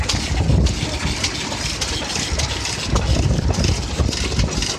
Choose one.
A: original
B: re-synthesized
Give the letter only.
A